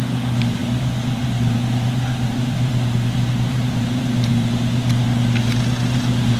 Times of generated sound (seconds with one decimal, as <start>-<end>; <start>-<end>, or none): 0.6-4.3